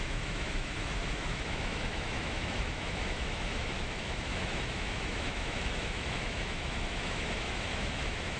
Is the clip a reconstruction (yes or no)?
yes